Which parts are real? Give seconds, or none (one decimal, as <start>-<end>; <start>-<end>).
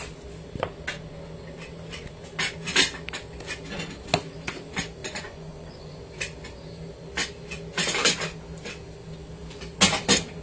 0.0-5.0; 6.0-10.4